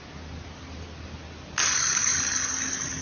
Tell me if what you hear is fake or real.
real